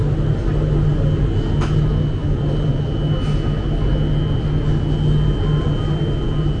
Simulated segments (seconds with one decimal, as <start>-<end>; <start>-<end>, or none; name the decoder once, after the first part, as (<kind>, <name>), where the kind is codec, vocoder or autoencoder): none